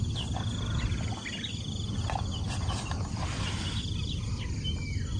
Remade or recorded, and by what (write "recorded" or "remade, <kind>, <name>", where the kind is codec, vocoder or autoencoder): recorded